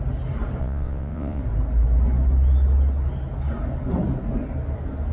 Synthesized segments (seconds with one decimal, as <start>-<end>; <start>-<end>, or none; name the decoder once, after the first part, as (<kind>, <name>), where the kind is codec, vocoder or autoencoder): 0.6-1.4 (vocoder, WaveNeXt)